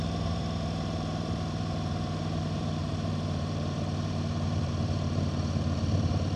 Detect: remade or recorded remade